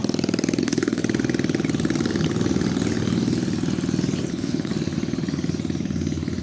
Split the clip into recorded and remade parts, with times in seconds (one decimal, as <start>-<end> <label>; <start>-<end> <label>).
0.0-0.6 recorded; 0.6-1.0 remade; 1.0-4.3 recorded; 4.3-4.7 remade; 4.7-6.4 recorded